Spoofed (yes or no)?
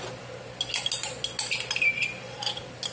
no